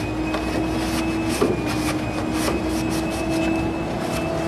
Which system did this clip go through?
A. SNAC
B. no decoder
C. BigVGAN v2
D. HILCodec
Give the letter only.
B